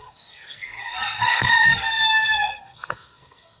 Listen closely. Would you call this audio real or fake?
fake